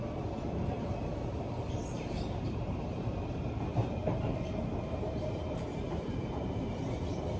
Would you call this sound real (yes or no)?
no